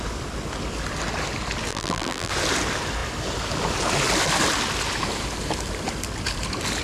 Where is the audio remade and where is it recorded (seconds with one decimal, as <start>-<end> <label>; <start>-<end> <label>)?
0.0-1.7 recorded; 1.7-2.3 remade; 2.3-6.8 recorded